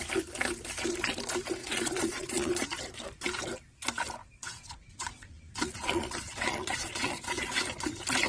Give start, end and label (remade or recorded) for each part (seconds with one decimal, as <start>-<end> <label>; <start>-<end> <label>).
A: 0.0-1.6 recorded; 1.6-2.5 remade; 2.5-4.2 recorded; 4.2-7.6 remade; 7.6-8.3 recorded